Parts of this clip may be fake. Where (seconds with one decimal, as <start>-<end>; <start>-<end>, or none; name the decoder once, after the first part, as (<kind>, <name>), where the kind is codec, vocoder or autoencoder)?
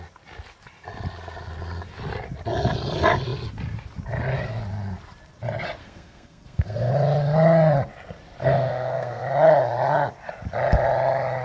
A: 5.8-6.9 (codec, SNAC); 8.4-9.2